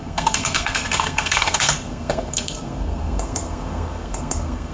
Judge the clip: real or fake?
fake